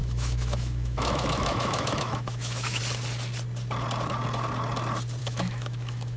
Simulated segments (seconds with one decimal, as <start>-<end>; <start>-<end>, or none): 0.0-2.8; 5.2-6.2